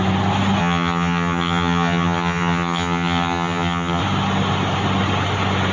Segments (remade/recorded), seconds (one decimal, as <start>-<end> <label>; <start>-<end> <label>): 0.0-0.6 recorded; 0.6-4.0 remade; 4.0-5.7 recorded